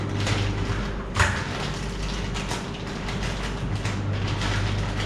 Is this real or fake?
real